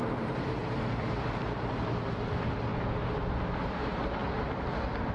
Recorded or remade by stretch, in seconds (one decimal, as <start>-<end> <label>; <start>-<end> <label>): 0.0-2.7 remade; 2.7-3.7 recorded; 3.7-4.2 remade; 4.2-5.1 recorded